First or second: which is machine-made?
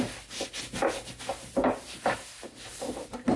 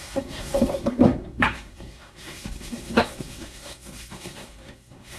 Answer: second